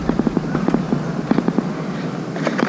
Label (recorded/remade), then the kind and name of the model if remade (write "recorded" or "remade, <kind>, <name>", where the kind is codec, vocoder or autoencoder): recorded